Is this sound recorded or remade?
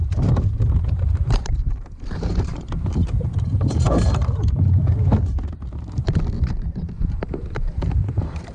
remade